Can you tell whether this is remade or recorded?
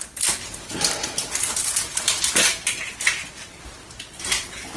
recorded